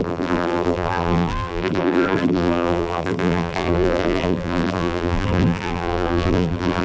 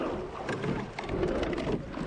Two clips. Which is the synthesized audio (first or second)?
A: first